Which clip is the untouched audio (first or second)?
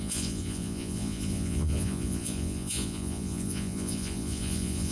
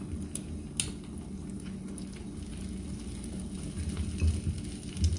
second